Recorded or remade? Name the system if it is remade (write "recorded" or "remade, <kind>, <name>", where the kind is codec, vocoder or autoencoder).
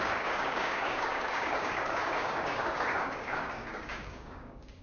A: remade, codec, DAC